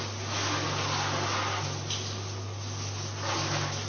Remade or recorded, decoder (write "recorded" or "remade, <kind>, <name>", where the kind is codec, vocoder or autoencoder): recorded